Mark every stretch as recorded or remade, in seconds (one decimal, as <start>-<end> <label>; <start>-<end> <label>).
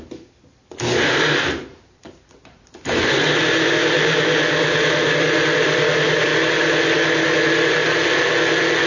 0.0-1.7 recorded; 1.7-4.2 remade; 4.2-8.9 recorded